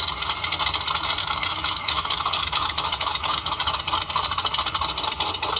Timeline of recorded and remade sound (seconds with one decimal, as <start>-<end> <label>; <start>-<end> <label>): 0.0-1.2 recorded; 1.2-3.8 remade; 3.8-5.6 recorded